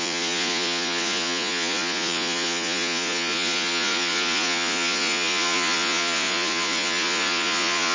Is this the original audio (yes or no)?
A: no